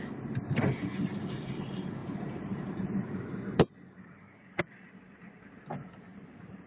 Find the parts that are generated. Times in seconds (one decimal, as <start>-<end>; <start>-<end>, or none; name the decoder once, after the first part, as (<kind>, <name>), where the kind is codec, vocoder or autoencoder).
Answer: 2.0-4.6 (vocoder, BigVGAN v2); 6.1-6.7

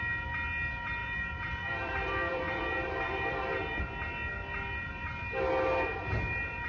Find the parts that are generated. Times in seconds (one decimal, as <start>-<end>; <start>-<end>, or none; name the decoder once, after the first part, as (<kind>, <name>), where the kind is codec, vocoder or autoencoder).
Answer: 1.0-3.8 (vocoder, BigVGAN v2)

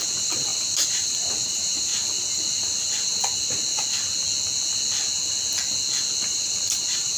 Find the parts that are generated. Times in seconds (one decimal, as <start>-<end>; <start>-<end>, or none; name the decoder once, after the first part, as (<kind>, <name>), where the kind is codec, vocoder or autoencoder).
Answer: 0.0-1.9 (vocoder, BigVGAN v2); 6.2-7.2

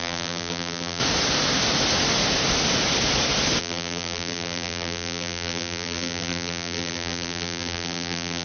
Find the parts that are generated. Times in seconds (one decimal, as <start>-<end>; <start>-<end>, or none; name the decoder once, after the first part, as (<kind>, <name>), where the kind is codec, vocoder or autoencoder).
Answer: 0.0-1.0 (vocoder, BigVGAN v2); 3.6-8.4